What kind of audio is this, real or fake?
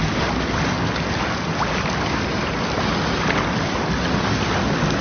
real